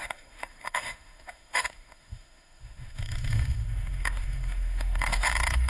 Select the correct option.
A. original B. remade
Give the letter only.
B